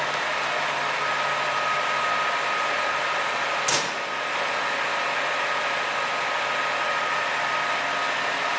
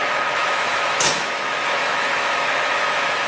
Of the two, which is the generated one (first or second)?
second